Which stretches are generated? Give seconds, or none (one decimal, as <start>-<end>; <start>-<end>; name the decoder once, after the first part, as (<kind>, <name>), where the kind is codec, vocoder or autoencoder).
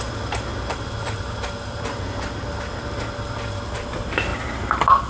none